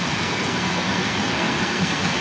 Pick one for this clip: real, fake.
fake